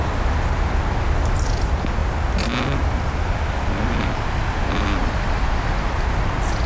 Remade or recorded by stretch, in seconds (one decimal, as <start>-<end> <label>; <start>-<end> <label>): 0.0-6.7 recorded